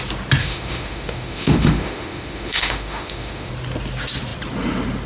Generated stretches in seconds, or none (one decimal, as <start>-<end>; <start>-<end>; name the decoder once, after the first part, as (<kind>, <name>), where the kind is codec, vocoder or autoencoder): 0.4-3.5 (autoencoder, DAC-VAE)